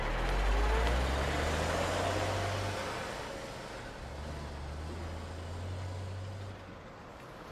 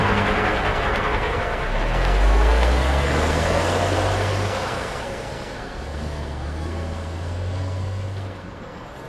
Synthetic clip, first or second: second